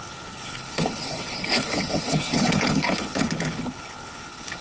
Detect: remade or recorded remade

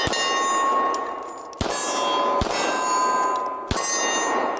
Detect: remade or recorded recorded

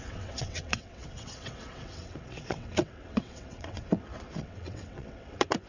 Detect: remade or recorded remade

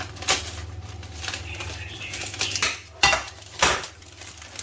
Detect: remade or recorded remade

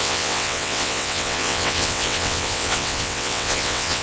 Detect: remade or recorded remade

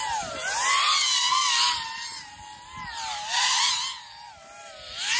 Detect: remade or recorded recorded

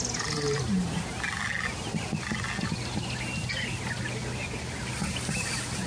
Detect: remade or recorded recorded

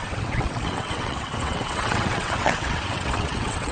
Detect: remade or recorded remade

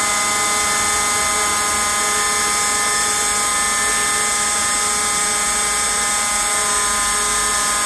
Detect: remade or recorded recorded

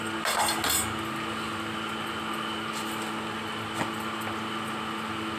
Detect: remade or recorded recorded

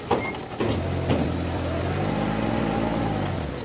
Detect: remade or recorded recorded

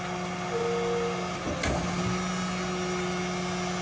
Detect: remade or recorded recorded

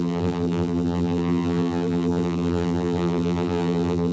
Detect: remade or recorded remade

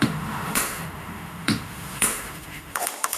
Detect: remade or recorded remade